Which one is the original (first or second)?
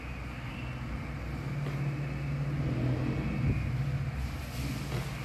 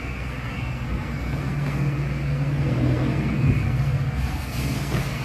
first